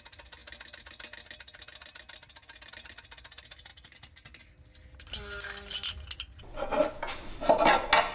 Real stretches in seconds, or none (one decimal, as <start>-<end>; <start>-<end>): 0.0-8.1